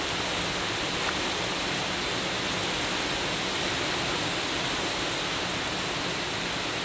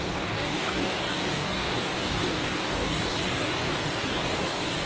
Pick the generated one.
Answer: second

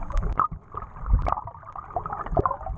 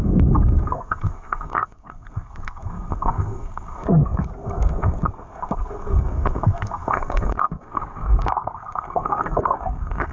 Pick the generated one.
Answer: second